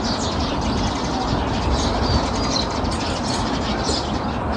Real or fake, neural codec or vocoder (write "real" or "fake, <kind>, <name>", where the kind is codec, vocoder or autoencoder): real